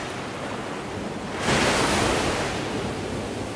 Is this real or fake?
real